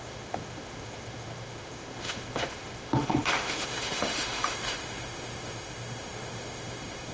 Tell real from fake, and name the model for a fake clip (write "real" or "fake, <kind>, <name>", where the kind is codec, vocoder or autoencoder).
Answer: fake, autoencoder, DAC-VAE